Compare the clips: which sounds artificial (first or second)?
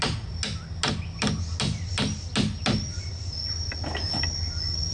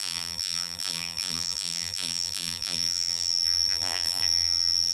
second